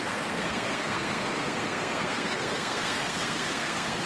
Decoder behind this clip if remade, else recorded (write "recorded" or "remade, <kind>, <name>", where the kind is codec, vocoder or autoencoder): remade, codec, SNAC